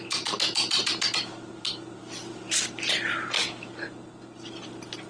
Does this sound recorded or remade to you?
recorded